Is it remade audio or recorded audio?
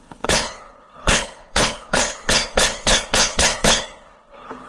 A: remade